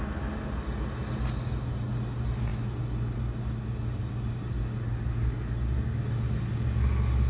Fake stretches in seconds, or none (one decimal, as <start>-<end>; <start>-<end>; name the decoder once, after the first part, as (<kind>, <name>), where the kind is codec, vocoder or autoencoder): none